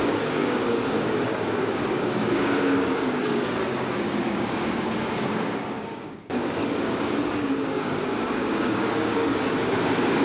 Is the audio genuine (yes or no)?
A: no